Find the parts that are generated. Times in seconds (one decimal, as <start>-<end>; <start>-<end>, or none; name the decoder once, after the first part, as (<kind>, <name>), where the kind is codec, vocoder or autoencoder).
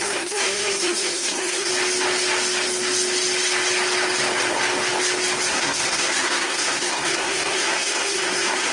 0.0-1.7 (codec, SNAC); 5.5-8.7